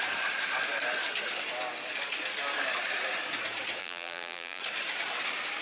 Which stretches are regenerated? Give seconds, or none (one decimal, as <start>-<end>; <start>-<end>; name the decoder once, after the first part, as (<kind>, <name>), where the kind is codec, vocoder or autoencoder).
3.8-4.6 (vocoder, BigVGAN v2)